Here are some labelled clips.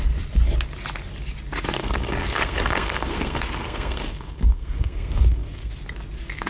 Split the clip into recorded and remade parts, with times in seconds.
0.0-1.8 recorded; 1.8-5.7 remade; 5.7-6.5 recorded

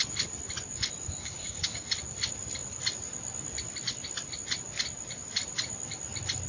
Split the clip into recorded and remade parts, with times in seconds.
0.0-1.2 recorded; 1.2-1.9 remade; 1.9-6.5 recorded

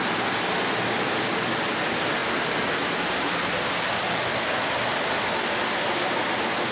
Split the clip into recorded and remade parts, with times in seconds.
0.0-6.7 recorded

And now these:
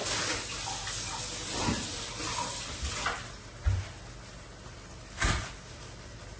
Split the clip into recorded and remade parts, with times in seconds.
0.0-6.4 recorded

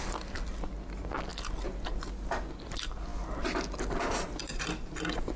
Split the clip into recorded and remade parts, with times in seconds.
0.0-5.4 recorded

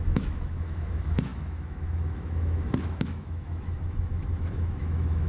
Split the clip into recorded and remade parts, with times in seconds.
0.0-5.3 remade

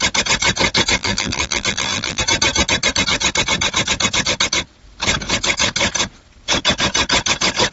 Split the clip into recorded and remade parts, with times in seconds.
0.0-1.0 recorded; 1.0-2.2 remade; 2.2-7.7 recorded

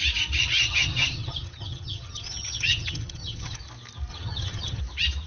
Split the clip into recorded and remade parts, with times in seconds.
0.0-0.4 recorded; 0.4-3.6 remade; 3.6-4.1 recorded; 4.1-4.8 remade; 4.8-5.3 recorded